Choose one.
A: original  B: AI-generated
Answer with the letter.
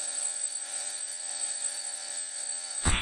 B